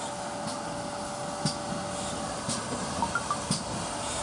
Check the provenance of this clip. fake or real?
real